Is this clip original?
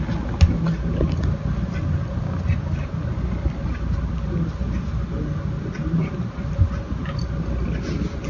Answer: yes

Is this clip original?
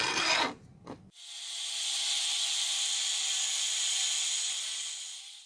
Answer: yes